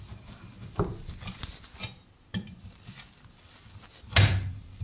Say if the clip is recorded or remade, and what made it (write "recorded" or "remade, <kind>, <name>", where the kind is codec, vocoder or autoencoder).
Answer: recorded